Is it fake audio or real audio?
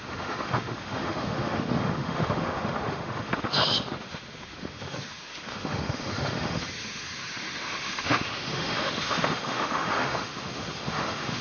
fake